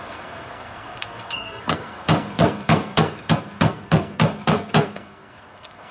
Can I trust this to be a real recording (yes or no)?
no